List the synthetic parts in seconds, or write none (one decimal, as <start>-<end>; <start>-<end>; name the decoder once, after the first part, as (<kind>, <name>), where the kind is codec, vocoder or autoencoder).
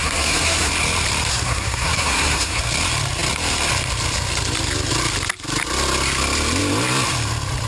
0.0-0.7 (codec, SNAC); 1.3-2.6